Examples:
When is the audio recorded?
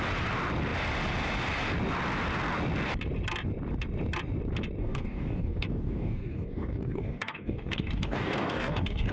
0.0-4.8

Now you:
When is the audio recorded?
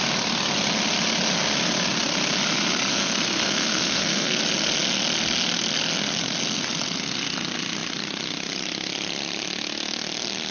0.0-2.9; 4.4-10.5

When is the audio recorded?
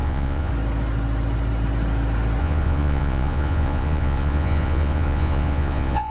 0.5-2.4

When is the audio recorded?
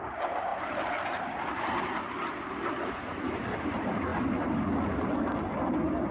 0.0-6.1